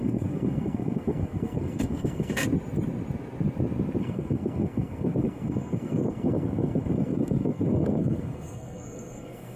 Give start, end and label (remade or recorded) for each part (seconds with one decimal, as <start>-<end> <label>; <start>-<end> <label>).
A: 0.0-2.4 remade; 2.4-4.0 recorded; 4.0-9.6 remade

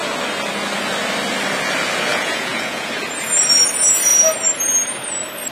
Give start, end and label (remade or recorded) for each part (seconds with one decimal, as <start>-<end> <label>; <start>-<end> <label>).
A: 0.0-2.1 recorded; 2.1-2.9 remade; 2.9-5.5 recorded

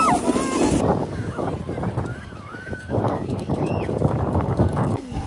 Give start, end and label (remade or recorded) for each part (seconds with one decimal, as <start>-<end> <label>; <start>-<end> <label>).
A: 0.0-1.0 recorded; 1.0-1.5 remade; 1.5-2.1 recorded; 2.1-5.3 remade

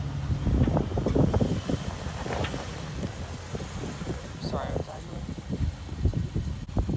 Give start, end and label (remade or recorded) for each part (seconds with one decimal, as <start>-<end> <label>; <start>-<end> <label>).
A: 0.0-7.0 recorded

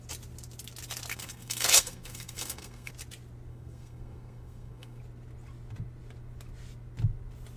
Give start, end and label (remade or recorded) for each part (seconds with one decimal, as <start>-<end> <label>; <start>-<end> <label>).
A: 0.0-1.1 recorded; 1.1-2.9 remade; 2.9-3.5 recorded; 3.5-5.0 remade; 5.0-7.6 recorded